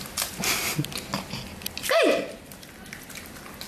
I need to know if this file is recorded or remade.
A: recorded